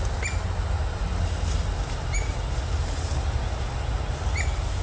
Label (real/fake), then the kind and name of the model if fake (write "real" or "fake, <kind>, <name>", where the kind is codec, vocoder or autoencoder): real